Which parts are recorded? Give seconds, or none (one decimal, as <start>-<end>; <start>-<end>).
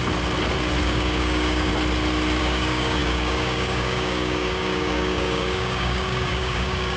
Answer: 0.0-0.8; 1.7-2.4